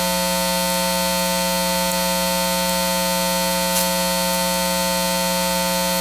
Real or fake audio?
real